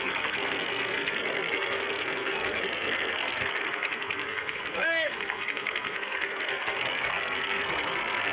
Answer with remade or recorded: remade